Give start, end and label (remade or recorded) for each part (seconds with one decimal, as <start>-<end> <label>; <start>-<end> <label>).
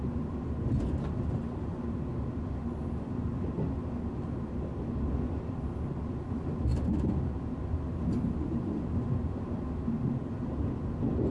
0.0-11.3 recorded